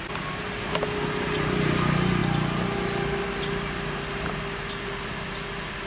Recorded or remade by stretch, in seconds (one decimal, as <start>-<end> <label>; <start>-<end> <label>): 0.0-5.9 recorded